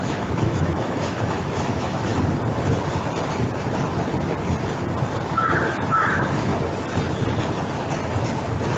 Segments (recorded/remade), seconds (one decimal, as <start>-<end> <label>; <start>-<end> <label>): 0.0-2.1 remade; 2.1-5.7 recorded; 5.7-6.5 remade; 6.5-8.8 recorded